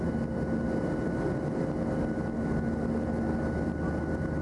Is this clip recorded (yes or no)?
yes